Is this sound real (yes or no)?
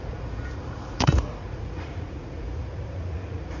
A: no